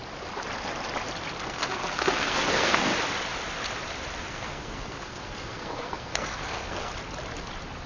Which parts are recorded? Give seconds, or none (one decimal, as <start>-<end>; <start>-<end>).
0.0-1.4; 2.9-4.2; 6.9-7.9